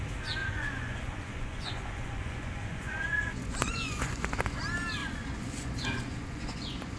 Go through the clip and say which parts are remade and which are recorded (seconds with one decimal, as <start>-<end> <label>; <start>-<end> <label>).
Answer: 0.0-0.4 recorded; 0.4-4.6 remade; 4.6-5.0 recorded; 5.0-7.0 remade